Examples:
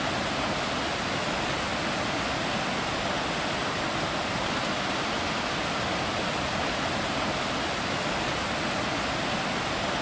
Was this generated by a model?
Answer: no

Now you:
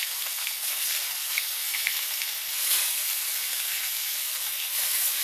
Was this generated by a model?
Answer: yes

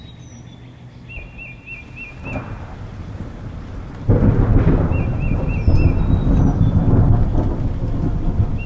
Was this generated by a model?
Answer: no